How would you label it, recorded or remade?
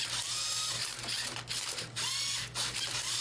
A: recorded